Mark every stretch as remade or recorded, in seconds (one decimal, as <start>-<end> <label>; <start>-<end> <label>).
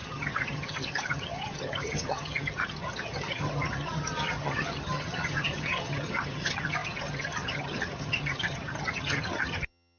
0.0-10.0 remade